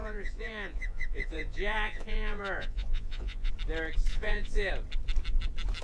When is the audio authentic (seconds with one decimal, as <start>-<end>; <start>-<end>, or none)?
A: 3.5-4.1; 4.7-5.8